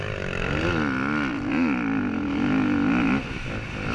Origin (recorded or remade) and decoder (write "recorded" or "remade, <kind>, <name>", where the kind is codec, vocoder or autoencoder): recorded